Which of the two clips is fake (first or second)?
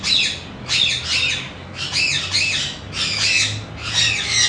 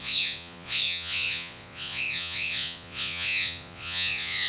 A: second